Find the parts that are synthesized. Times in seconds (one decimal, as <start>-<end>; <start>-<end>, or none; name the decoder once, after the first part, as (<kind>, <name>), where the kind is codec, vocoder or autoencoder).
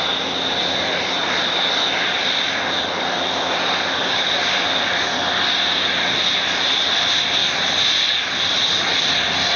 none